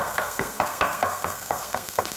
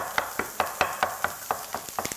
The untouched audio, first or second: second